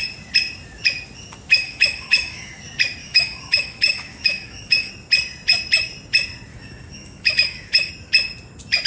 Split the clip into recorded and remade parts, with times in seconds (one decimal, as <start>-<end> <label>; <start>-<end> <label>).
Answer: 0.0-1.5 recorded; 1.5-2.6 remade; 2.6-3.0 recorded; 3.0-4.9 remade; 4.9-6.5 recorded; 6.5-7.9 remade; 7.9-8.9 recorded